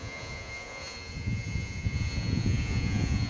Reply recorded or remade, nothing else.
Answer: remade